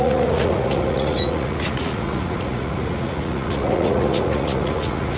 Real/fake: fake